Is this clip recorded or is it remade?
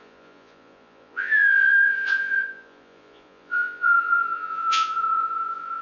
remade